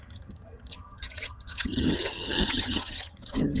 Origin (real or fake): fake